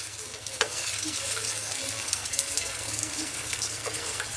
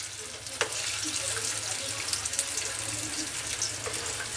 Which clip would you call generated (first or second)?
first